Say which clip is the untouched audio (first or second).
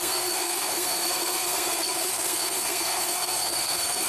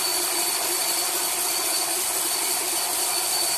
second